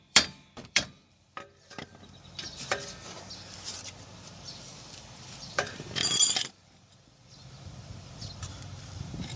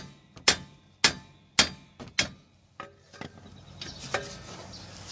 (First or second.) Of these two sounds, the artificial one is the first